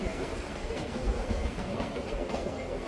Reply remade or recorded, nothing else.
remade